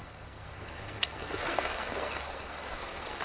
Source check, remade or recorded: remade